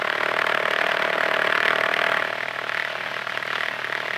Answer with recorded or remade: recorded